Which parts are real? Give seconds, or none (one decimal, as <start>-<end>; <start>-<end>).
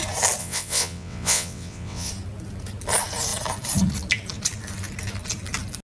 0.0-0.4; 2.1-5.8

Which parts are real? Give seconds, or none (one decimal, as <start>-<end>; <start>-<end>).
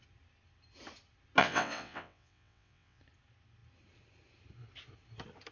0.0-1.4; 3.0-5.5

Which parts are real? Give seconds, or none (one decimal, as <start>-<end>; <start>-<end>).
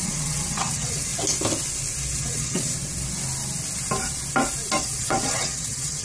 1.1-2.2; 2.7-4.8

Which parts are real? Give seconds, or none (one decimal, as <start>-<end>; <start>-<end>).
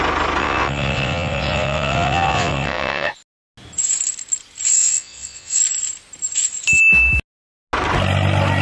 0.0-0.4; 3.1-4.7; 5.6-8.6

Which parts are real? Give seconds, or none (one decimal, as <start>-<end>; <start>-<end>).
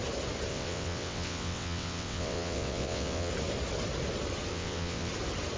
0.0-0.5; 3.3-4.5; 5.1-5.6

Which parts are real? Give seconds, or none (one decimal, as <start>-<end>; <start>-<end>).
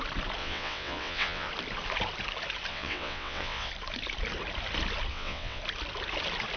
0.0-0.4; 1.5-2.7; 3.7-5.1; 5.6-6.6